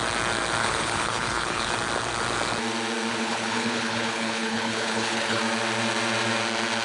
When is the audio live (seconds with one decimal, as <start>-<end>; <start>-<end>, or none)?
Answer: 0.0-0.6; 1.7-3.1; 5.4-6.8